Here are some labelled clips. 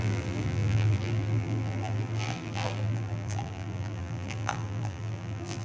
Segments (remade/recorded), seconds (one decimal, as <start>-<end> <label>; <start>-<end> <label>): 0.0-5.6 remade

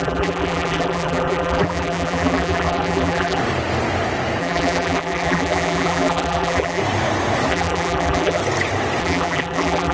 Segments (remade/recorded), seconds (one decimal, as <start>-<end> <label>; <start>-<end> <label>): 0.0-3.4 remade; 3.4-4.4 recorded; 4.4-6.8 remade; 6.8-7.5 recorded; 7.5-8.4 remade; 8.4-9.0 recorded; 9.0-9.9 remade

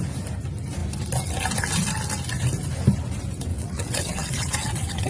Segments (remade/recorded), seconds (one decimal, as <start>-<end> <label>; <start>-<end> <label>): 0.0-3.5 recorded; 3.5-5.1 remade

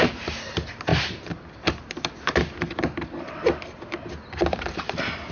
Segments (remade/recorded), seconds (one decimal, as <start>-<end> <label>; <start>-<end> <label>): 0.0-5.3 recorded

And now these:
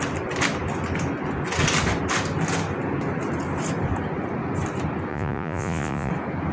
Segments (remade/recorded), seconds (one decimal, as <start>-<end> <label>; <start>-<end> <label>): 0.0-5.1 recorded; 5.1-6.1 remade; 6.1-6.5 recorded

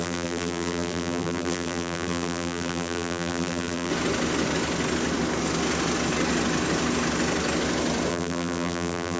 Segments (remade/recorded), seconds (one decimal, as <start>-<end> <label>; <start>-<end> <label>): 0.0-3.9 remade; 3.9-8.1 recorded; 8.1-9.2 remade

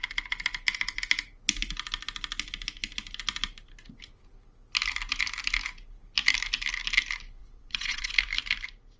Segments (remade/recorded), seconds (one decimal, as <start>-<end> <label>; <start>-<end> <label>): 0.0-7.4 recorded; 7.4-8.1 remade; 8.1-9.0 recorded

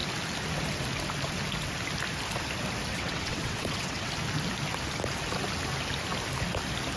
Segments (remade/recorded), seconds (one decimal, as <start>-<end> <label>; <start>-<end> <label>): 0.0-2.9 recorded; 2.9-4.1 remade; 4.1-7.0 recorded